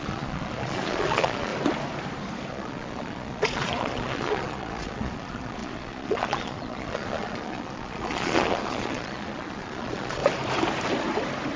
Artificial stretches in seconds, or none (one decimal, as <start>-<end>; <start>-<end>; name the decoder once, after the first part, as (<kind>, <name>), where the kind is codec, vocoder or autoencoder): 0.0-1.5 (vocoder, Vocos); 2.5-10.2